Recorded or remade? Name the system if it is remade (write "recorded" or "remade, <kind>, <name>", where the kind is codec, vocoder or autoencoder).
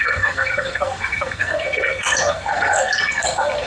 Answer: remade, codec, SNAC